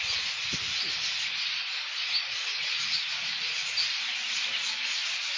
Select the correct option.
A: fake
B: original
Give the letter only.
B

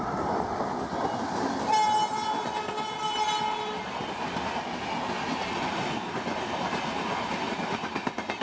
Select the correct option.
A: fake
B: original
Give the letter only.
B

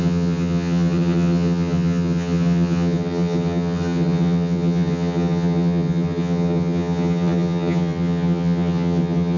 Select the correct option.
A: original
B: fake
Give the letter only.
B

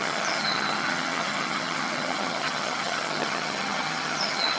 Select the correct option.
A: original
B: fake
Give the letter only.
B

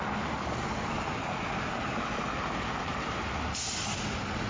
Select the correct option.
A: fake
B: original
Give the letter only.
B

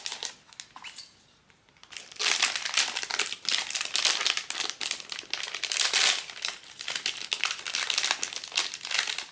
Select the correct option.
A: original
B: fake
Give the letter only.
A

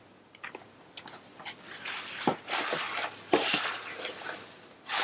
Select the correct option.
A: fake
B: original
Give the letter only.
B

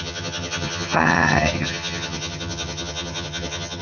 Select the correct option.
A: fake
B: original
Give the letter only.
A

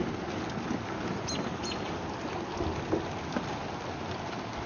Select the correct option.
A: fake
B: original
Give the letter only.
B